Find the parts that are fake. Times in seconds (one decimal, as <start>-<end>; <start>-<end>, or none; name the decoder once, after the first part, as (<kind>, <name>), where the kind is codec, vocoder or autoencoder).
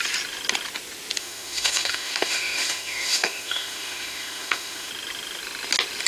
1.2-4.9 (autoencoder, DAC-VAE)